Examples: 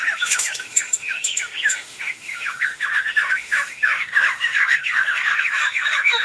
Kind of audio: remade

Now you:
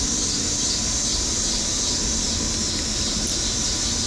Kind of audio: recorded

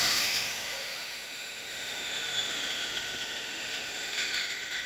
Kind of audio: remade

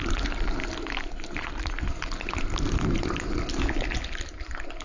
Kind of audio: recorded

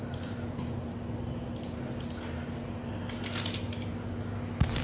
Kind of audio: recorded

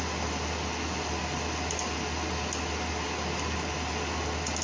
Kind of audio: recorded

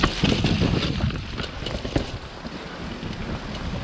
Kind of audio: recorded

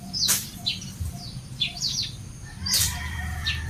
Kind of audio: remade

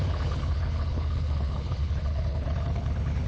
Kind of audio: remade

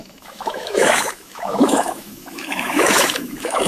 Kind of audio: remade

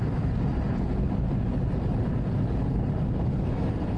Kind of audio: recorded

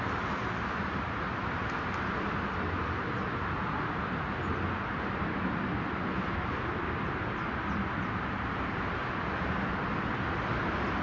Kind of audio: recorded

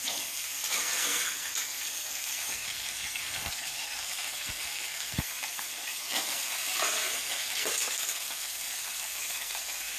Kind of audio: remade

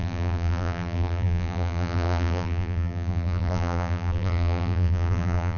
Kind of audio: remade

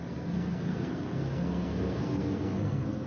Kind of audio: remade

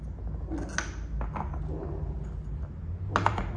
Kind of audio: recorded